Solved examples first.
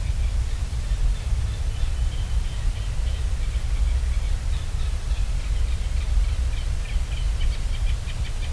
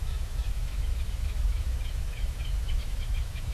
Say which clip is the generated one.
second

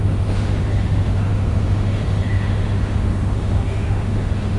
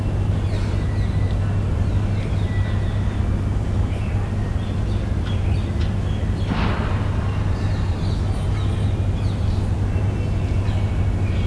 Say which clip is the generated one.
first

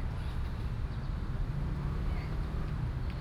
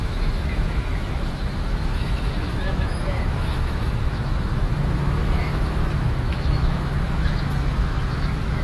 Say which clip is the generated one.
second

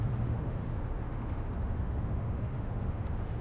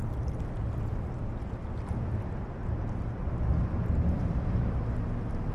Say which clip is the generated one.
first